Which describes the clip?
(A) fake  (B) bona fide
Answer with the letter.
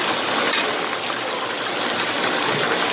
B